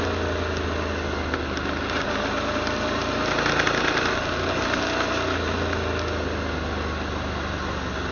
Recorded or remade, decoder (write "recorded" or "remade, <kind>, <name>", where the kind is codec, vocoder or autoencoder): recorded